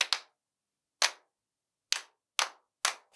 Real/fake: real